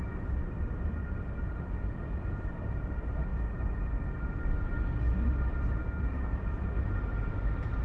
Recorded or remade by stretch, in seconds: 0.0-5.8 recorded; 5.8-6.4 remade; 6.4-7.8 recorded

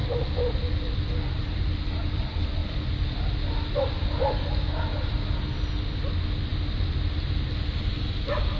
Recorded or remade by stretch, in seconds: 0.0-8.6 recorded

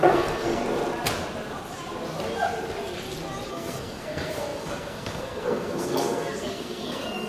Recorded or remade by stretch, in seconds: 0.0-0.6 remade; 0.6-3.5 recorded; 3.5-7.3 remade

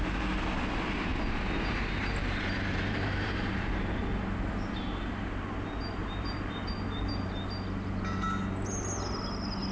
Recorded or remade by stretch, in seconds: 0.0-2.2 recorded; 2.2-4.0 remade; 4.0-6.0 recorded; 6.0-6.7 remade; 6.7-9.7 recorded

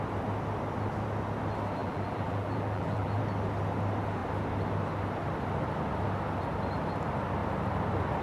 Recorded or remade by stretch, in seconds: 0.0-1.8 recorded; 1.8-3.2 remade; 3.2-8.2 recorded

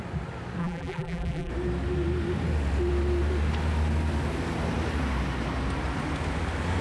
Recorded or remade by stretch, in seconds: 0.0-0.6 recorded; 0.6-1.5 remade; 1.5-6.8 recorded